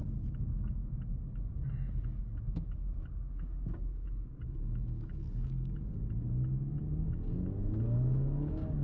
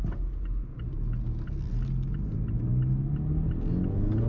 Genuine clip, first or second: second